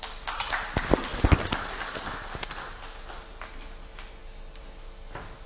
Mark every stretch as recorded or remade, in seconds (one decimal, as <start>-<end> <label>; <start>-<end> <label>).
0.0-5.5 recorded